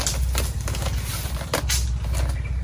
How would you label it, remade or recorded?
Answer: recorded